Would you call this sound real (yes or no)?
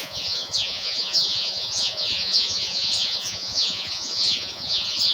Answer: no